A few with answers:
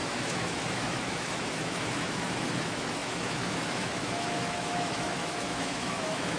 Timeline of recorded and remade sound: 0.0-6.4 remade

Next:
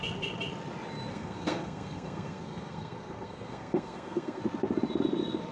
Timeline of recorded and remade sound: 0.0-1.1 recorded; 1.1-4.4 remade; 4.4-5.5 recorded

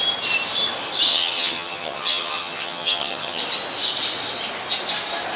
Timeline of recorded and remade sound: 0.0-1.1 recorded; 1.1-3.4 remade; 3.4-5.4 recorded

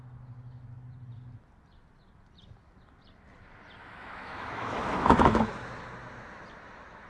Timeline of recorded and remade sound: 0.0-3.8 recorded; 3.8-5.5 remade; 5.5-7.1 recorded

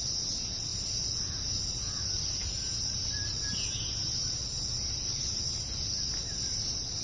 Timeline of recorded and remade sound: 0.0-2.4 recorded; 2.4-5.5 remade; 5.5-7.0 recorded

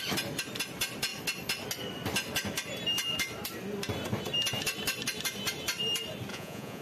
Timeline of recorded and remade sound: 0.0-6.3 recorded; 6.3-6.8 remade

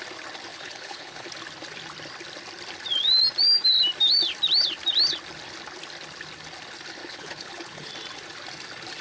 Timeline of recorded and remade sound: 0.0-0.5 recorded; 0.5-1.3 remade; 1.3-7.0 recorded; 7.0-7.9 remade; 7.9-9.0 recorded

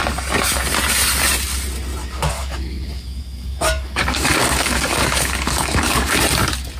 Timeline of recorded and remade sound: 0.0-2.0 recorded; 2.0-6.1 remade; 6.1-6.8 recorded